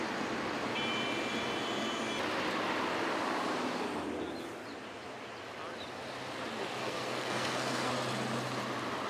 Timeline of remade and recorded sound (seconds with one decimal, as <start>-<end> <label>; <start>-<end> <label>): 0.0-6.8 recorded; 6.8-7.9 remade; 7.9-9.1 recorded